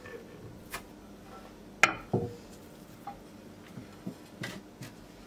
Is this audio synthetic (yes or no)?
no